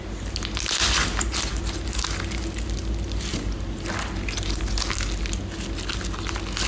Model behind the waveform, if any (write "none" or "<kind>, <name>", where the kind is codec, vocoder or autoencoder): none